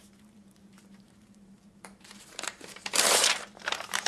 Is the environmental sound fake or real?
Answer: fake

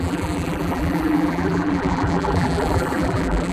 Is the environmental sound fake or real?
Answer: fake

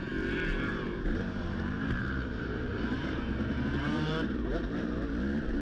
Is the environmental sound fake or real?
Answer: fake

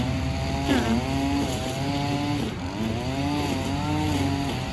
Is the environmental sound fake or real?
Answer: real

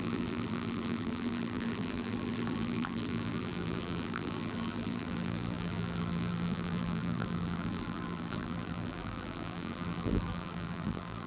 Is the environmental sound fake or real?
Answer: fake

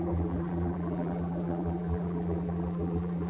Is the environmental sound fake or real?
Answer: fake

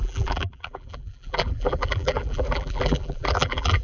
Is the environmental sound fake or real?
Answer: fake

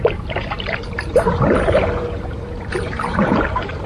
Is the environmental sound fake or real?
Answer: fake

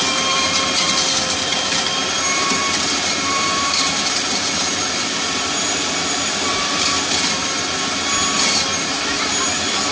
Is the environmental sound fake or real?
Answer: fake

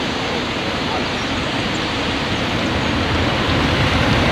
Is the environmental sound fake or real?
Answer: fake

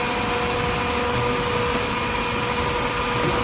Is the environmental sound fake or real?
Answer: real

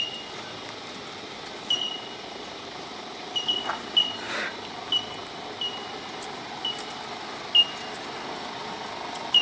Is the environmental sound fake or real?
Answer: real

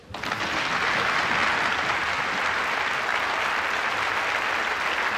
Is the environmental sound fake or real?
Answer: real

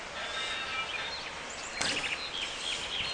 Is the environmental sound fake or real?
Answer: real